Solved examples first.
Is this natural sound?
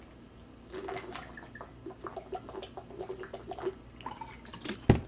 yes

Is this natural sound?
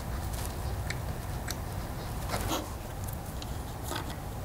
yes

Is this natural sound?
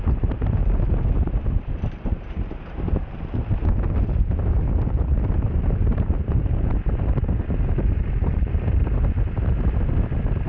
no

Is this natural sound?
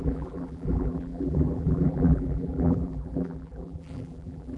no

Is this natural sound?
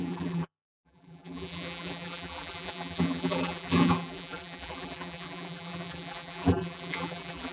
no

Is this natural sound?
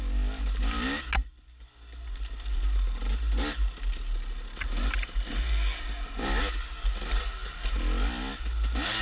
yes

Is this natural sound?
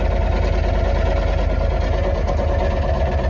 yes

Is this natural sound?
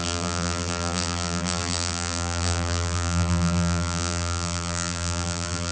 no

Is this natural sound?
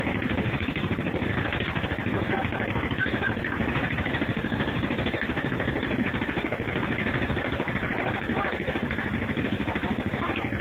no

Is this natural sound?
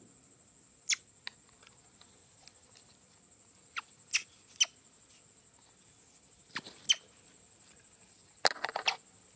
yes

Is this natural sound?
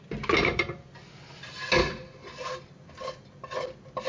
yes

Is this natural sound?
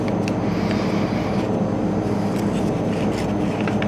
yes